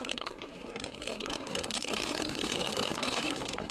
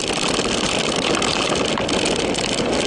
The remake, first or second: first